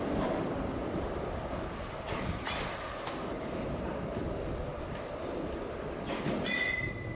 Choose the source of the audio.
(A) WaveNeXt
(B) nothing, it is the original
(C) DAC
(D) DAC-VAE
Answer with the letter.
B